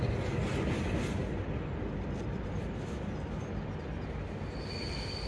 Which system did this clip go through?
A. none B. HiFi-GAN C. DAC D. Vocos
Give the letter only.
A